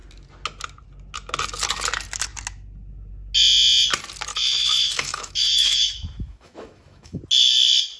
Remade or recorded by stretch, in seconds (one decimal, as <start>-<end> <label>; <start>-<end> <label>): 0.0-4.3 recorded; 4.3-7.2 remade; 7.2-8.0 recorded